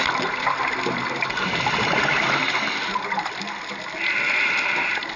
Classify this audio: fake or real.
real